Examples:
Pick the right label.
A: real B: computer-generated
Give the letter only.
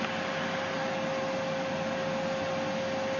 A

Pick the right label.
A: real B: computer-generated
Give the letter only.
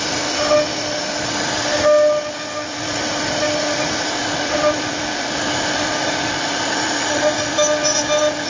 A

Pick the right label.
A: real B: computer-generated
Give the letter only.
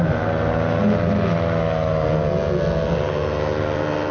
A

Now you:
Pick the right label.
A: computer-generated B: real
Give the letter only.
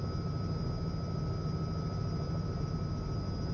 B